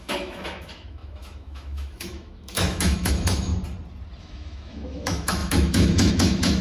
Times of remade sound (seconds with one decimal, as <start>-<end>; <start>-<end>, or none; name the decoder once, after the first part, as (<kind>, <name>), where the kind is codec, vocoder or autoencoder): 0.0-3.5 (autoencoder, DAC-VAE); 4.2-6.6